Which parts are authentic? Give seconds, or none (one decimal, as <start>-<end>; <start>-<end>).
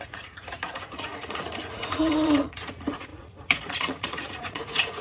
none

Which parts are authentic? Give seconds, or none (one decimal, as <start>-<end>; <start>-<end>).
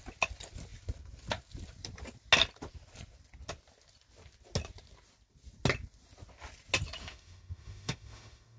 0.0-7.0